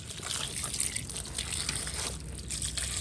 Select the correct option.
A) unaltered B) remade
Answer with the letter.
A